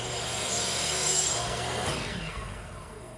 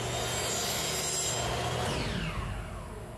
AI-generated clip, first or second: first